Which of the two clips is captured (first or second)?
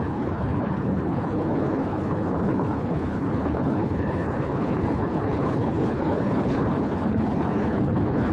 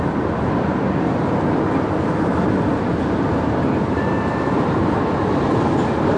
second